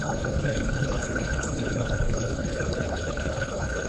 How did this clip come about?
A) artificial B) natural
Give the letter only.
A